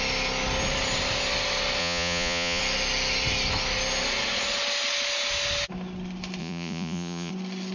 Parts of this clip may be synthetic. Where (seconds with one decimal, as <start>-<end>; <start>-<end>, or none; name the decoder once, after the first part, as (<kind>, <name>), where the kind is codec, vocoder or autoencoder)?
1.8-2.6 (vocoder, Vocos); 6.4-7.3